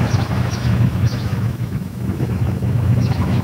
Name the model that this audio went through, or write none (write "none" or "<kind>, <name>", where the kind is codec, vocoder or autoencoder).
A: autoencoder, DAC-VAE